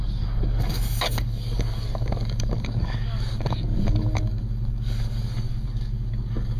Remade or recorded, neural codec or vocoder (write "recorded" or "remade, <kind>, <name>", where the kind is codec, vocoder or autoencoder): remade, codec, DAC